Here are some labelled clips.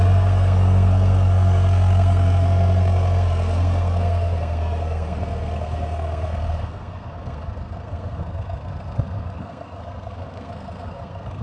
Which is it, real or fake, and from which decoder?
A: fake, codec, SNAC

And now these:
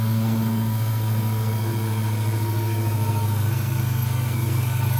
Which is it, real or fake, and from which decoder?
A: fake, codec, SNAC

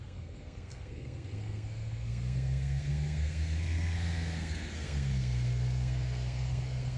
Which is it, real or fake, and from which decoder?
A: fake, codec, SNAC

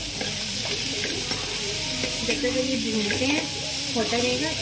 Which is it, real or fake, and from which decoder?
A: real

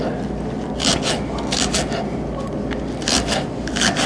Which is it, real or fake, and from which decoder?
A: real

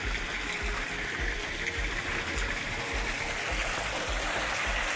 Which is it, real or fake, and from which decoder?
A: real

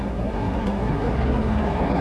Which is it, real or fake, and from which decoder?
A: fake, codec, SNAC